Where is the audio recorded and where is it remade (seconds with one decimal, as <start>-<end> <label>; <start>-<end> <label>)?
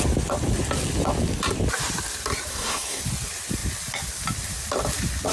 0.0-2.5 recorded; 2.5-3.0 remade; 3.0-5.3 recorded